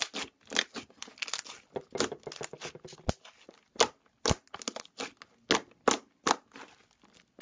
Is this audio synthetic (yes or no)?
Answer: no